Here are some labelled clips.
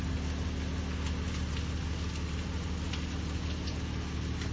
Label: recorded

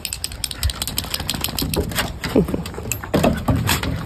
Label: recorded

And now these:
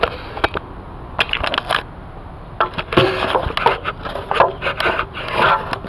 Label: recorded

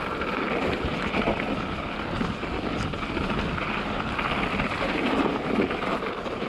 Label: recorded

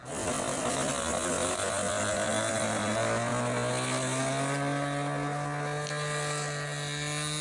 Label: recorded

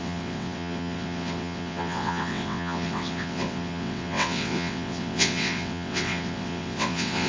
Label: remade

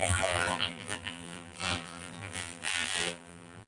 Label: remade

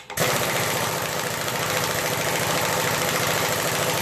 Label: recorded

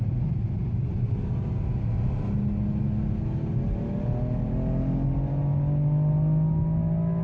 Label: recorded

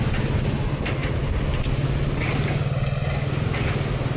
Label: recorded